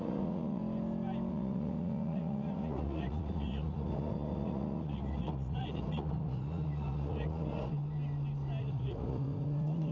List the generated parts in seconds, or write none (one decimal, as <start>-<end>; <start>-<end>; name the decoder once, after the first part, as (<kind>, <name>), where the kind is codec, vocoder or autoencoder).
0.0-0.6 (vocoder, Vocos); 1.3-7.7; 8.6-9.9